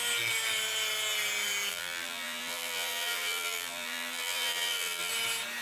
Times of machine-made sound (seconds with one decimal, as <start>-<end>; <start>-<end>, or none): 1.7-5.1